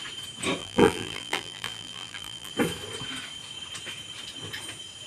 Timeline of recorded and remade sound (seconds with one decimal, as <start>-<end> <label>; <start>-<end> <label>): 0.0-0.6 recorded; 0.6-2.5 remade; 2.5-5.1 recorded